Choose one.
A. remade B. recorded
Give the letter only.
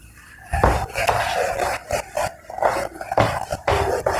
A